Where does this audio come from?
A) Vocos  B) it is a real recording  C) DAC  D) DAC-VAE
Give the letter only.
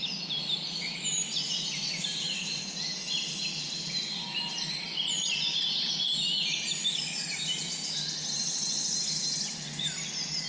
B